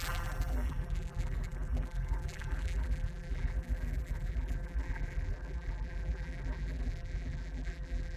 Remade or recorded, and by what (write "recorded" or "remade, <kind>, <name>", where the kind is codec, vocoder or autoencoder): remade, vocoder, BigVGAN v2